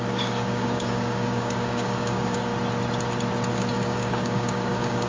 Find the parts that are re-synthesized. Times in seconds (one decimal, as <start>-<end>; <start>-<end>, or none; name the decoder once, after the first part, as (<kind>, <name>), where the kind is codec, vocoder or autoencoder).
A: 0.0-2.5 (codec, DAC); 3.5-5.1